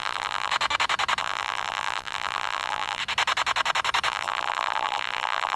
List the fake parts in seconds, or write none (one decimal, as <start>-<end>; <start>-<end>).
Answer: 0.0-0.5; 1.2-3.0; 4.1-5.6